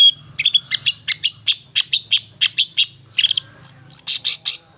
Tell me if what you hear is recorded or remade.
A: recorded